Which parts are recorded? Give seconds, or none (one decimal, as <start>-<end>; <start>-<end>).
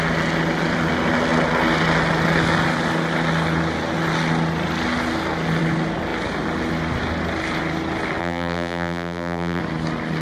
0.0-8.2; 9.6-10.2